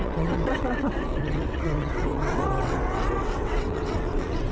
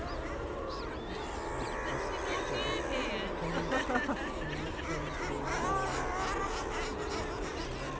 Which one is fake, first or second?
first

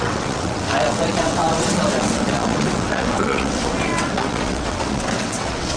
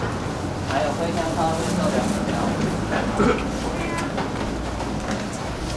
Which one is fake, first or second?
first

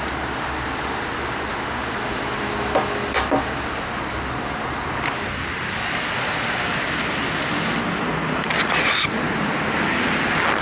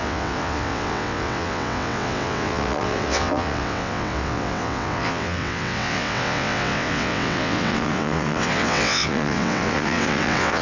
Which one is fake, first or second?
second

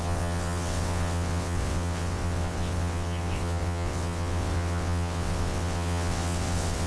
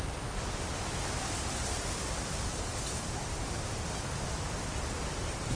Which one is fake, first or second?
first